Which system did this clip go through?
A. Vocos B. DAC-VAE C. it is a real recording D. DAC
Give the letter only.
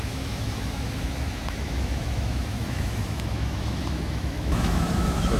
B